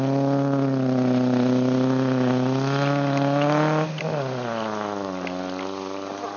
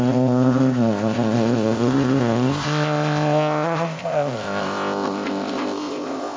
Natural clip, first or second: first